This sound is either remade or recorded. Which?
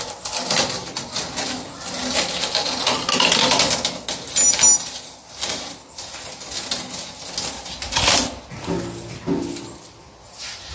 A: recorded